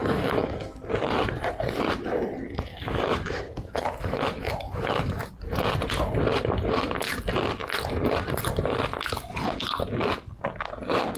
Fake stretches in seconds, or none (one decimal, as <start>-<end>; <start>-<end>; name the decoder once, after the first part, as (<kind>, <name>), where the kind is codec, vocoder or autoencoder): 0.0-0.8 (autoencoder, DAC-VAE); 2.7-5.3